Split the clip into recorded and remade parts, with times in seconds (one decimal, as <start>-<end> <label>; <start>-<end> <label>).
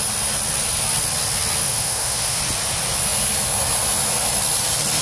0.0-1.6 recorded; 1.6-2.4 remade; 2.4-5.0 recorded